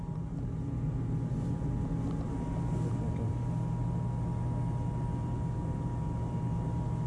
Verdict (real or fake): real